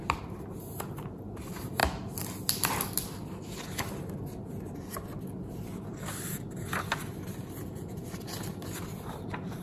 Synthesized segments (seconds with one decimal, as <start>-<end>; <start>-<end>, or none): none